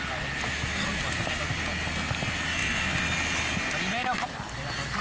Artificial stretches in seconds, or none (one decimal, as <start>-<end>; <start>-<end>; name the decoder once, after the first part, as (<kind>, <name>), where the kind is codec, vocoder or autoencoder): none